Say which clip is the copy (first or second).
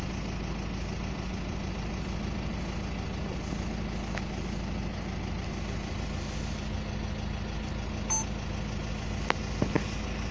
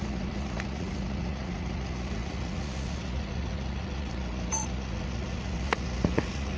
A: second